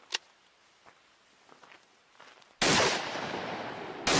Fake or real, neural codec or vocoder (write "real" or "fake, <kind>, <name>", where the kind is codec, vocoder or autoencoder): real